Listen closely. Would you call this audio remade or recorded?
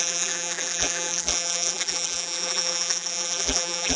remade